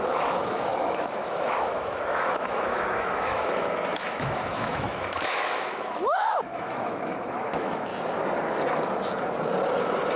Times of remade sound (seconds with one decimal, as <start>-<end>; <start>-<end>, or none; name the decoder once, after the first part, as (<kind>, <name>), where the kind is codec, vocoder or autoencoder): 0.0-7.9 (autoencoder, DAC-VAE)